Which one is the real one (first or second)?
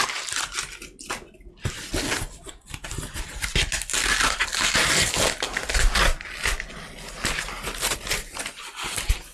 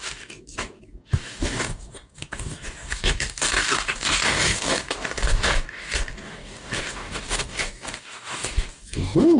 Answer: first